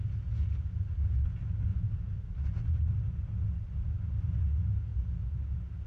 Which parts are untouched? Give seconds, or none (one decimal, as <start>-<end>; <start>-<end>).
0.0-1.7; 2.9-5.9